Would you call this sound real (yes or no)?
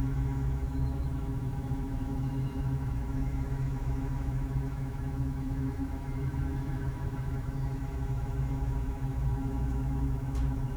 no